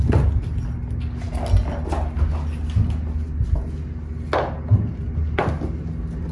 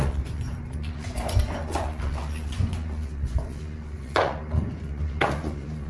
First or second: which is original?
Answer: first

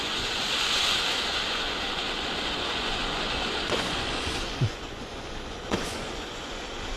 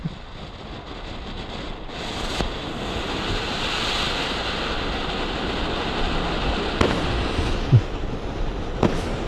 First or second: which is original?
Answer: second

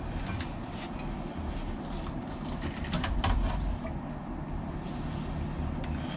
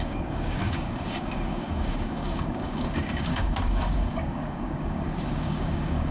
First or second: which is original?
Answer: first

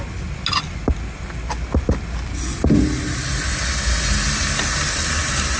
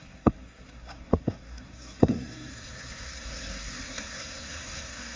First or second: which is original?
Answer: first